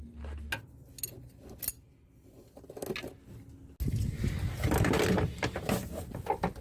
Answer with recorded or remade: recorded